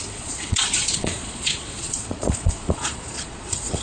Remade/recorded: remade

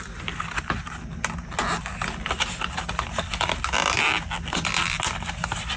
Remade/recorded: recorded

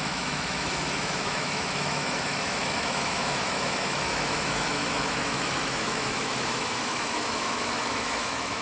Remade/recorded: remade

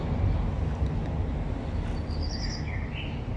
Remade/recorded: recorded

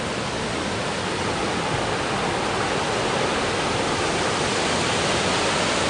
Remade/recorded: remade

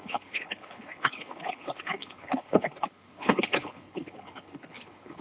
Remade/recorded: remade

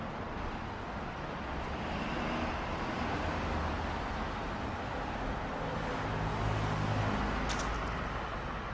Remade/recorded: recorded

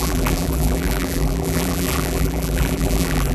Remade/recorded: remade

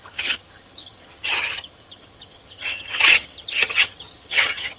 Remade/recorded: remade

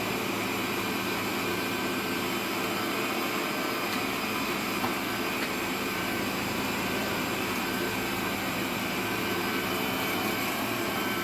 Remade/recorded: remade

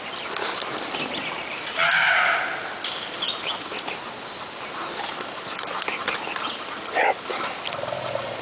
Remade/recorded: recorded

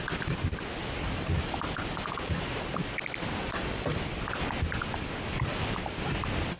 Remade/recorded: recorded